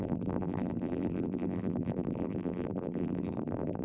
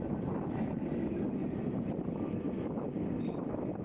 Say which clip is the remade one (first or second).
first